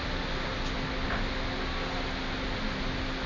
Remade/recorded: recorded